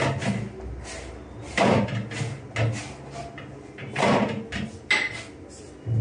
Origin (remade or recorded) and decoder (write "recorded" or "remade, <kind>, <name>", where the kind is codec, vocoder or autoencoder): recorded